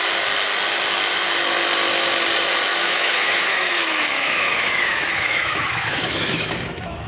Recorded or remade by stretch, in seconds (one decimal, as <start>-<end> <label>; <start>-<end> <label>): 0.0-2.7 recorded; 2.7-7.1 remade